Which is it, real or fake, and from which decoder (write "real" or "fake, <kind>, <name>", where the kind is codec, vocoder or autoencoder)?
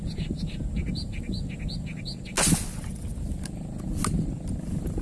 real